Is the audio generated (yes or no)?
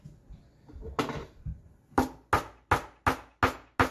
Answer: no